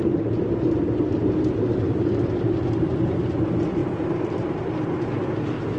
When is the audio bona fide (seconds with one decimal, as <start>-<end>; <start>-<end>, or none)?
0.0-3.8; 4.6-5.8